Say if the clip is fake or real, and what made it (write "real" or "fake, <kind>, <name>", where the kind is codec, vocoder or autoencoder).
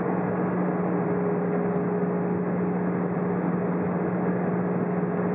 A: real